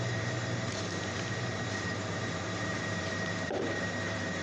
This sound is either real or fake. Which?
fake